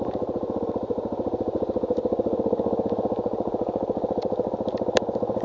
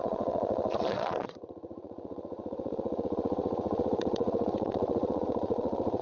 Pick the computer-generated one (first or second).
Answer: second